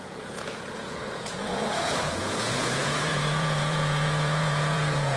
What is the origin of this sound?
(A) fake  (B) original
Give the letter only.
A